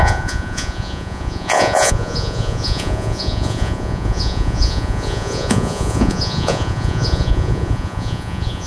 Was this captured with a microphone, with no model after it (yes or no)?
no